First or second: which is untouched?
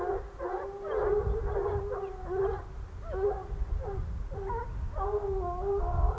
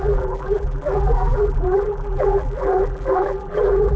first